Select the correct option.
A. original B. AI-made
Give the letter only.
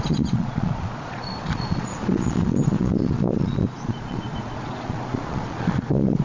B